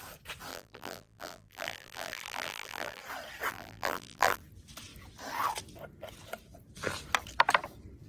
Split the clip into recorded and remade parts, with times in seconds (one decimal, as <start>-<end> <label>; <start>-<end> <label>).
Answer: 0.0-0.5 recorded; 0.5-3.0 remade; 3.0-3.5 recorded; 3.5-4.4 remade; 4.4-8.1 recorded